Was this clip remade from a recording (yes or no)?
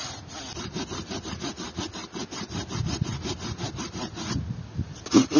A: no